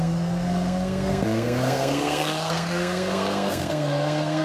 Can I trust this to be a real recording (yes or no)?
no